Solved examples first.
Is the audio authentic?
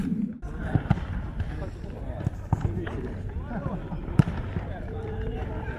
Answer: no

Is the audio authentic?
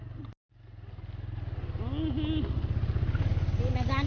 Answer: yes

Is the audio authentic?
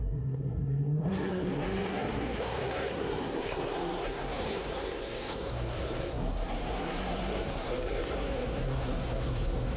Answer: no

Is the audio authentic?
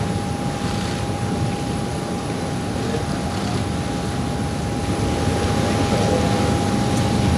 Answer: yes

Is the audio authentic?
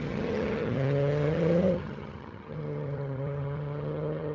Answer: no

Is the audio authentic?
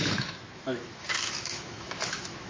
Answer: no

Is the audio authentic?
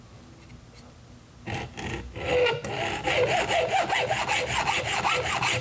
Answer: yes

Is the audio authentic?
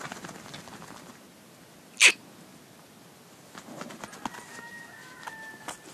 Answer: yes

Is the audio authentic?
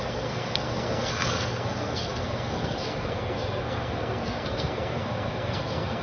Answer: no